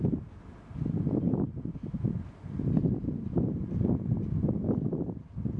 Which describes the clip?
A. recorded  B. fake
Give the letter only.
A